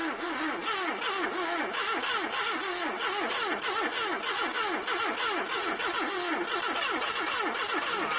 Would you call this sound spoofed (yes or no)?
no